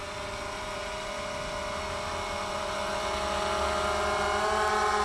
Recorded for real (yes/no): yes